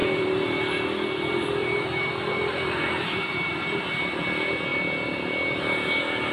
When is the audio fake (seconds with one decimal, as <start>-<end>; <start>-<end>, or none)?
1.6-3.8